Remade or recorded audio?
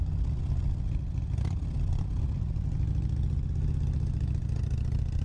recorded